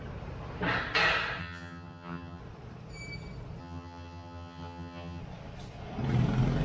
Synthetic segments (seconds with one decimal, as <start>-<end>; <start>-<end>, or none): 1.4-2.4; 3.6-5.2